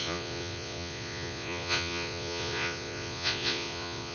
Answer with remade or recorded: remade